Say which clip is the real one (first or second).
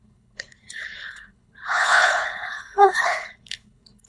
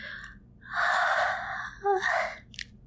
second